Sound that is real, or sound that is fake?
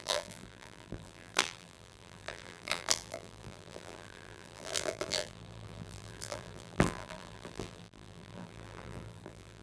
fake